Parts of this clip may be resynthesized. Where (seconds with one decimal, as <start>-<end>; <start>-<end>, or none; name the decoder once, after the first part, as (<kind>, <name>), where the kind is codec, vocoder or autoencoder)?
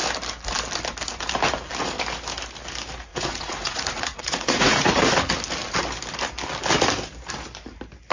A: 3.1-5.1 (vocoder, Vocos)